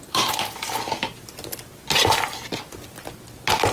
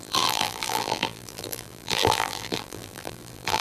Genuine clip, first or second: first